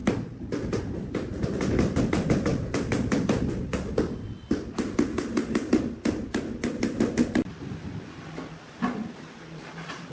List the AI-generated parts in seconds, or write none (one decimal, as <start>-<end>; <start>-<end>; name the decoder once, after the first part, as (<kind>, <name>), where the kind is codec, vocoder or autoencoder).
none